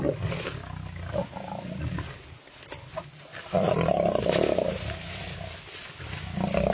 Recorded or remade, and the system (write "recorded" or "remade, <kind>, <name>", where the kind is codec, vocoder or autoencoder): recorded